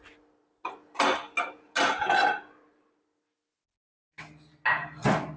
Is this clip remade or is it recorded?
recorded